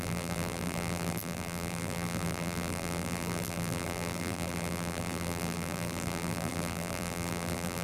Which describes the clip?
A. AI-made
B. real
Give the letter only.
A